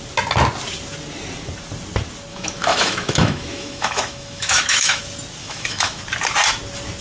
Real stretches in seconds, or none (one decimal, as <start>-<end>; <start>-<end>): 0.0-2.3; 5.0-5.4; 6.0-7.0

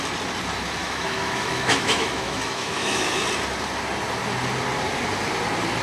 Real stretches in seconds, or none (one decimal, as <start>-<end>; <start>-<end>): 0.0-0.8; 3.2-5.8

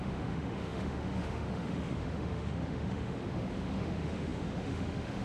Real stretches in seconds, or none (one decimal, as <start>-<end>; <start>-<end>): none